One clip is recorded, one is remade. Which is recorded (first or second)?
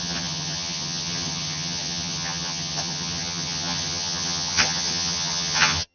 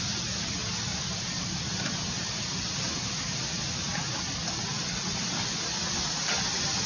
second